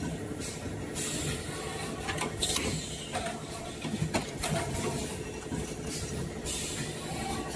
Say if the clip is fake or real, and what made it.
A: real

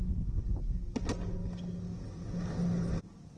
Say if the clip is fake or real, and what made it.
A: real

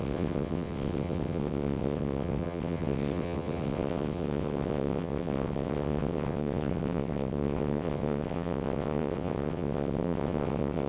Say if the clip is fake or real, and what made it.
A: fake, vocoder, WaveNeXt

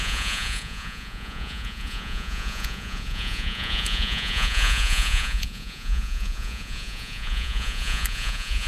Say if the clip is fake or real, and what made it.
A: fake, vocoder, Vocos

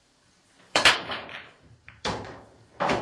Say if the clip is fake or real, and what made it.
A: fake, vocoder, BigVGAN v2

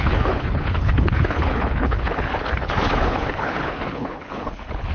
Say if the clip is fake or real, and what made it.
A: fake, codec, HILCodec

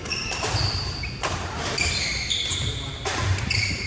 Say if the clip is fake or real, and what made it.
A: fake, vocoder, BigVGAN v2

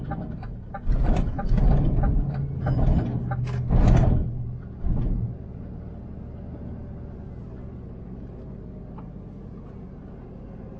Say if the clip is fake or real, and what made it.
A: real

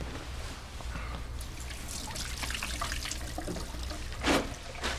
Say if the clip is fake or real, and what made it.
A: real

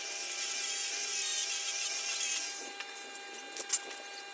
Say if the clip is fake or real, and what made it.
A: real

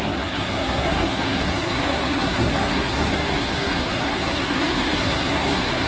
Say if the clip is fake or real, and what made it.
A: fake, codec, SNAC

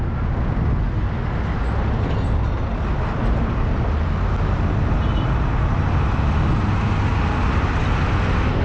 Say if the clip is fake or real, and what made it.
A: real